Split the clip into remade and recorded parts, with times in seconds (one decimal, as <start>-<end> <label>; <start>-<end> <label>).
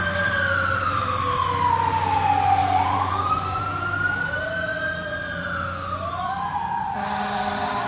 0.0-2.6 recorded; 2.6-3.6 remade; 3.6-7.9 recorded